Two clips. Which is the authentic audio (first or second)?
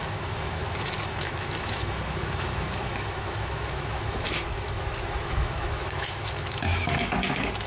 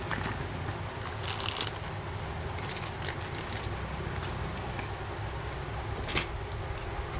second